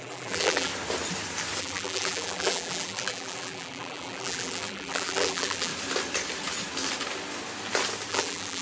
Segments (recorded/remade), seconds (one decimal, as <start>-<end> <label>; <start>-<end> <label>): 0.0-0.7 remade; 0.7-1.6 recorded; 1.6-5.7 remade; 5.7-8.1 recorded; 8.1-8.6 remade